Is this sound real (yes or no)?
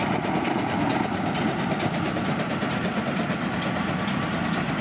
yes